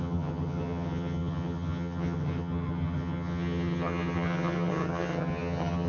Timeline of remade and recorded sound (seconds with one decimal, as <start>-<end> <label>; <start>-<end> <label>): 0.0-5.9 remade